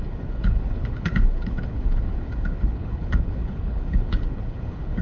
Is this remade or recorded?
remade